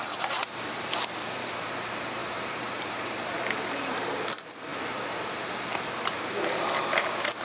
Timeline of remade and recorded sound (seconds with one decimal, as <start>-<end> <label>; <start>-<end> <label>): 0.0-2.2 recorded; 2.2-2.9 remade; 2.9-7.4 recorded